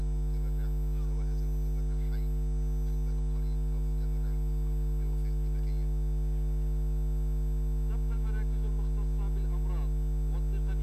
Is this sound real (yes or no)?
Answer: yes